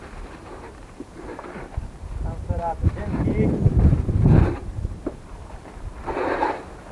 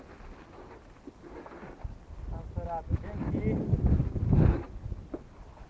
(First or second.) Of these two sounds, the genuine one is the second